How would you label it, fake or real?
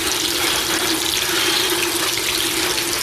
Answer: real